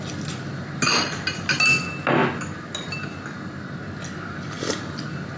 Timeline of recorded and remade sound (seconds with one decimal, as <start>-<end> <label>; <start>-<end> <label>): 0.0-5.4 recorded